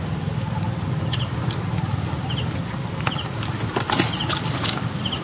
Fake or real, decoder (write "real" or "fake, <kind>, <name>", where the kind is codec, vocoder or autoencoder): real